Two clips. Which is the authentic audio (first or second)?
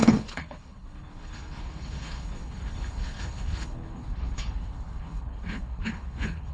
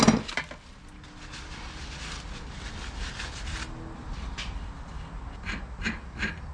second